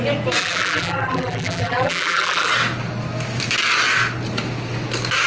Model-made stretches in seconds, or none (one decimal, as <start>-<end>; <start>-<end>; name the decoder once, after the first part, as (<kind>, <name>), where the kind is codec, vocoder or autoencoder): 0.4-2.5 (vocoder, BigVGAN v2)